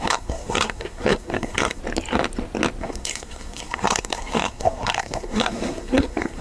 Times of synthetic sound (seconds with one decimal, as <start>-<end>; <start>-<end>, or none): 0.0-1.8; 2.8-6.4